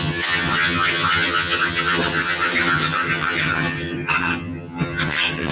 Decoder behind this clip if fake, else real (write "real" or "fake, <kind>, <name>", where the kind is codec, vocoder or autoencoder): fake, vocoder, HiFi-GAN